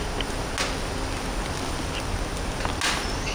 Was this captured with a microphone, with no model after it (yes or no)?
yes